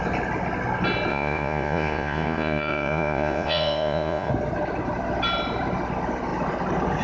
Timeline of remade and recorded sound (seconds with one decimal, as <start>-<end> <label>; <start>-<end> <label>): 0.0-1.1 recorded; 1.1-4.3 remade; 4.3-7.0 recorded